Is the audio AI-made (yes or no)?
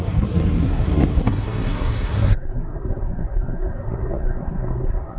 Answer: yes